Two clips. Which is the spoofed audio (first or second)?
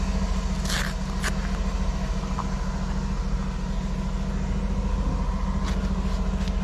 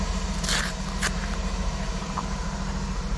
second